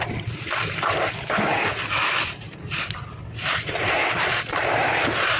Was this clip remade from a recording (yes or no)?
no